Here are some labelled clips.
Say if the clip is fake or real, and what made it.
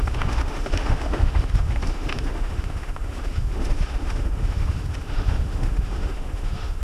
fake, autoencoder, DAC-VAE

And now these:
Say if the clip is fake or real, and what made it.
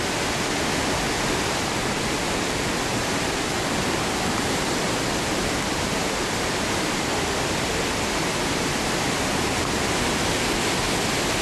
real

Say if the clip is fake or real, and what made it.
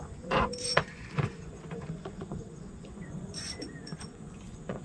fake, vocoder, Vocos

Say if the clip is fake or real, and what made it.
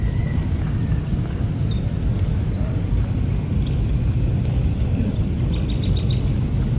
real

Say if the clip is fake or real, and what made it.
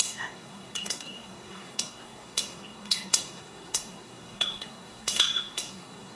fake, codec, SNAC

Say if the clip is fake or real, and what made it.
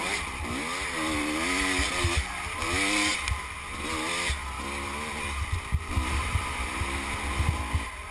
real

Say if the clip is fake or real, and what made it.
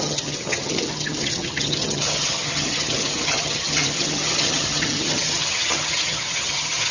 fake, vocoder, HiFi-GAN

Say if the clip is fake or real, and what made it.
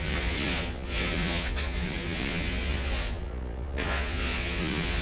fake, vocoder, Vocos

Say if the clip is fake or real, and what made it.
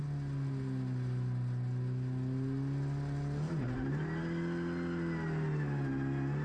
real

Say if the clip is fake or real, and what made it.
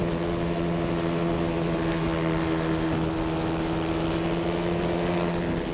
real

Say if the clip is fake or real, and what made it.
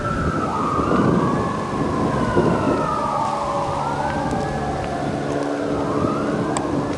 real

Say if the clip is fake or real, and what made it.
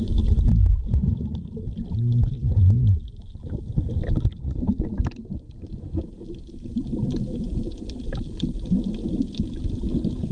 real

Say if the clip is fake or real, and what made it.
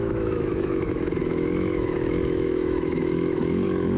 fake, autoencoder, DAC-VAE